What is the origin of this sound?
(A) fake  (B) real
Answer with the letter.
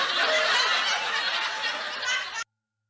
B